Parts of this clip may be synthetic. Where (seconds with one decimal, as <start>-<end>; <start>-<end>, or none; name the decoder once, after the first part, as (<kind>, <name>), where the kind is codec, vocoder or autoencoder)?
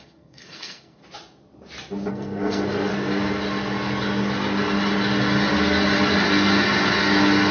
0.0-1.0 (codec, SNAC); 2.1-2.9